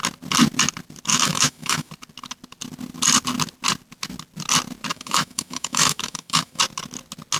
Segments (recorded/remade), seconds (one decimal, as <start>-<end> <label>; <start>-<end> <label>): 0.0-1.1 recorded; 1.1-1.9 remade; 1.9-4.9 recorded; 4.9-6.6 remade; 6.6-7.4 recorded